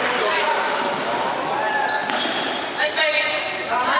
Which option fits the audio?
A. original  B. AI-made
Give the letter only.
B